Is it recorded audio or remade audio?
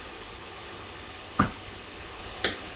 remade